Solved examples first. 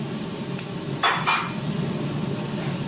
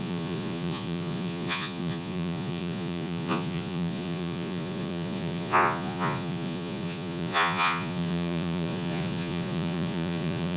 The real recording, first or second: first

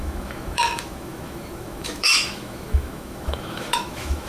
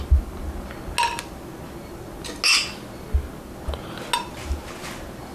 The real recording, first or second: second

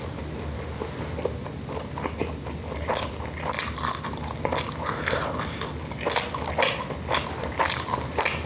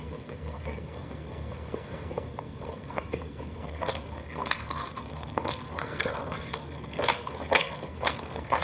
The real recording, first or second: first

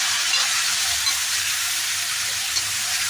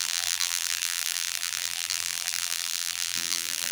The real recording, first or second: first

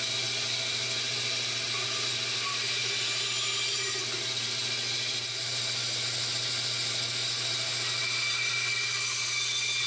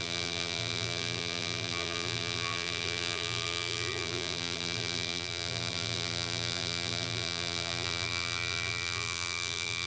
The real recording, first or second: first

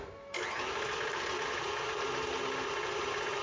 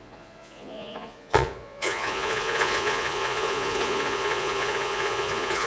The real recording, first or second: first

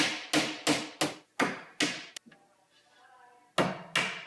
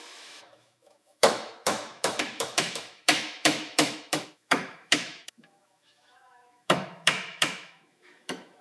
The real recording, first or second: first